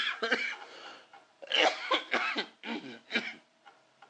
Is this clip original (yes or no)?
no